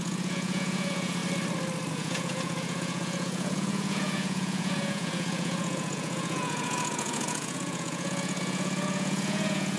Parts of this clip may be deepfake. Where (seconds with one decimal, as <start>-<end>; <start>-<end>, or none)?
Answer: 0.0-1.2; 1.9-9.8